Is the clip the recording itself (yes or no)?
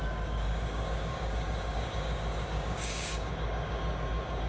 no